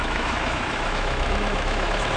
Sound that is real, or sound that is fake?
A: fake